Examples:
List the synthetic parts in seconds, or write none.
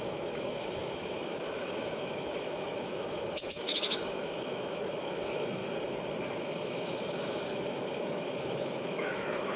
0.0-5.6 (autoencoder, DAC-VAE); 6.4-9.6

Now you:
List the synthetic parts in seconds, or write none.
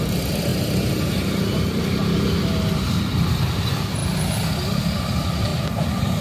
none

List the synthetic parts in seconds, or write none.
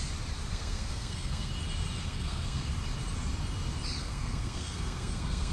0.5-1.5 (codec, SNAC); 2.0-2.7; 4.0-5.5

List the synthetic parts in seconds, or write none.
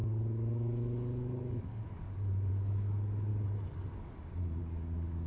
0.0-3.3 (codec, DAC); 4.6-5.3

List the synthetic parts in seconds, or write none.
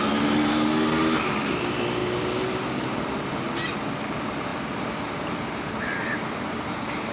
none